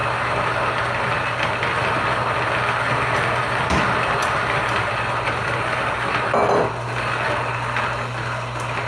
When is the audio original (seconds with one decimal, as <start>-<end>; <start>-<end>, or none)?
0.0-8.9